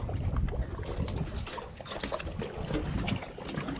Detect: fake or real real